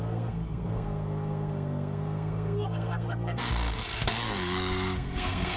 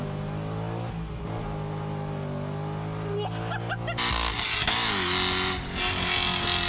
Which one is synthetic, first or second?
first